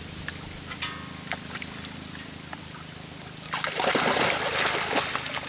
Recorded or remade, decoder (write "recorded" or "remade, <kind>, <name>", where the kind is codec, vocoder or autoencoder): recorded